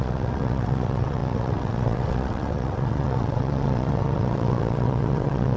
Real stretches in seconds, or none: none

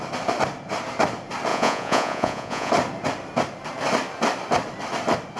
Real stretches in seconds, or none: 0.0-1.5; 2.7-5.4

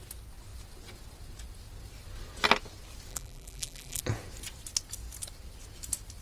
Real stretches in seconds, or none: 0.0-3.1; 4.0-6.2

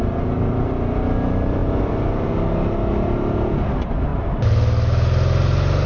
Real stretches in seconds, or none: 0.0-5.9

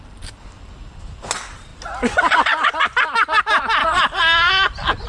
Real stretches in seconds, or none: 0.0-3.8; 4.5-5.1

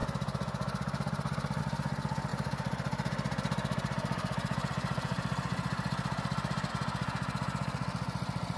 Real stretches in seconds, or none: 1.6-2.3; 6.7-8.6

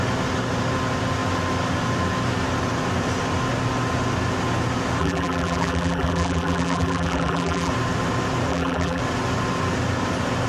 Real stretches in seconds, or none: 0.0-5.0; 7.7-8.5; 9.0-10.5

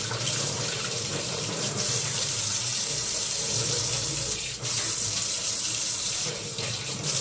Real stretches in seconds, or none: none